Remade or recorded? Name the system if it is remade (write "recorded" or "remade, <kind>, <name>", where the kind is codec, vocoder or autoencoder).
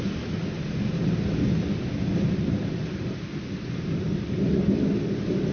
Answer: recorded